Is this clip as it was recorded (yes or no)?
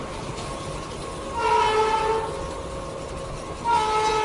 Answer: yes